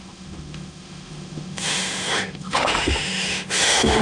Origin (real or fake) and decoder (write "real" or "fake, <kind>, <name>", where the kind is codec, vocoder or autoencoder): fake, autoencoder, DAC-VAE